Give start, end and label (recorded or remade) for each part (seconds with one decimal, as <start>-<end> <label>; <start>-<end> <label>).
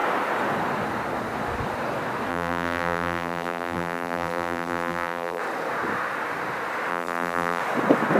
0.0-2.3 recorded; 2.3-5.4 remade; 5.4-6.9 recorded; 6.9-7.6 remade; 7.6-8.2 recorded